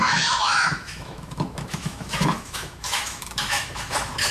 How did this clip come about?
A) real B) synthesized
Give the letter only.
B